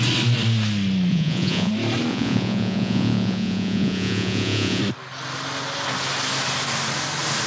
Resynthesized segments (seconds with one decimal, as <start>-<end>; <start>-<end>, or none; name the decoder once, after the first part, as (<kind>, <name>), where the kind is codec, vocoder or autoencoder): 1.1-1.7 (vocoder, Vocos); 2.1-4.8